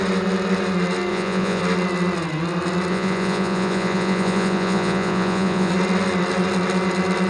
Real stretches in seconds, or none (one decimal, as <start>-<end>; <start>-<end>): 0.0-1.1; 1.6-2.9; 5.7-7.3